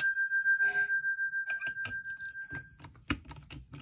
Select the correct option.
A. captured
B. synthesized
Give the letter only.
A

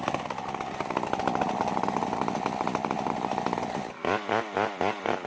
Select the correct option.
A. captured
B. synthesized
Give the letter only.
A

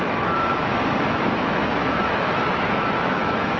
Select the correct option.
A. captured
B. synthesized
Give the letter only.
B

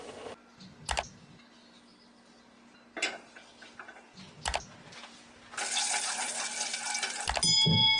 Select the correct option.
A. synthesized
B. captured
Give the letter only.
B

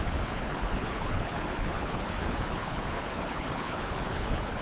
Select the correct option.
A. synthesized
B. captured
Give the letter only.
A